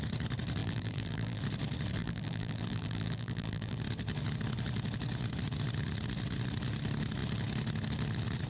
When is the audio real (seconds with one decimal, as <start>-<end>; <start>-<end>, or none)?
0.0-0.6; 1.4-2.0; 3.8-8.5